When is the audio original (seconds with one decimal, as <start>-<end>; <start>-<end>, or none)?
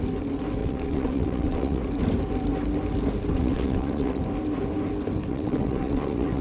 0.0-0.6; 1.8-3.3; 4.2-5.3